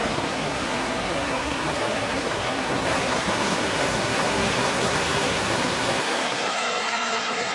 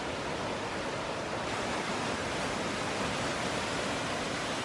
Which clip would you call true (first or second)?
second